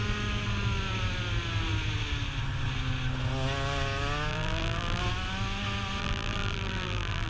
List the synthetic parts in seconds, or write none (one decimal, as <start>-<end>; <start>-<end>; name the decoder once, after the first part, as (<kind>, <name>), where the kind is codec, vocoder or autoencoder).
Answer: 4.3-5.0 (vocoder, BigVGAN v2); 6.0-7.3